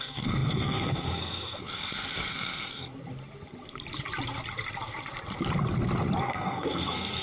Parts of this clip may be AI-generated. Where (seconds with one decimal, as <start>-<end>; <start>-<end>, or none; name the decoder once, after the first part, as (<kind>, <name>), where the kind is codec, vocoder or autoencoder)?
0.0-2.9 (codec, SNAC); 6.2-7.2